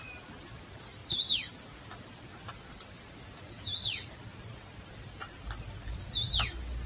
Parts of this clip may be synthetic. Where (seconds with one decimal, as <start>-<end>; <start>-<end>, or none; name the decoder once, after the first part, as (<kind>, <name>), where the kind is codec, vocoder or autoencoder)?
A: 1.0-2.5 (vocoder, BigVGAN v2); 4.3-6.0